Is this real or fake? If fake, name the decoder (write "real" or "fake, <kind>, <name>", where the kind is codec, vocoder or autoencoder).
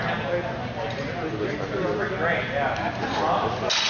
real